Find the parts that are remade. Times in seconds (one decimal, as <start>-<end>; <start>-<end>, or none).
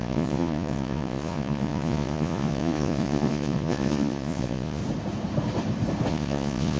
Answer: 0.0-4.8; 6.1-6.8